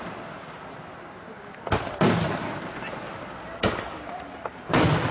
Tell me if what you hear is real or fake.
real